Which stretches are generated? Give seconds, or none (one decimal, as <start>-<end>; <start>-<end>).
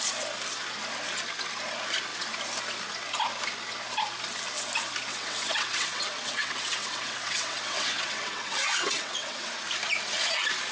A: 5.1-9.5